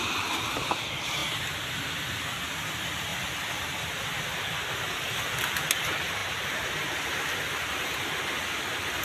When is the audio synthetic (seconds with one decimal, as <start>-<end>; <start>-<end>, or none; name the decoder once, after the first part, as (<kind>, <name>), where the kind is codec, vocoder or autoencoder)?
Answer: none